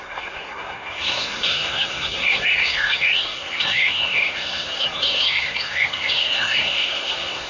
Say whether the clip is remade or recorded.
remade